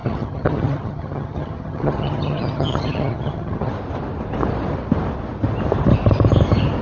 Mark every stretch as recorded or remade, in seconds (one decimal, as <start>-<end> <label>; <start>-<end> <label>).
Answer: 0.0-3.7 remade; 3.7-6.8 recorded